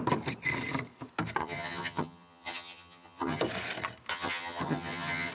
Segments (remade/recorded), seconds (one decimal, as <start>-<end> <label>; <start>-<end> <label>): 0.0-1.4 recorded; 1.4-3.4 remade; 3.4-4.1 recorded; 4.1-5.3 remade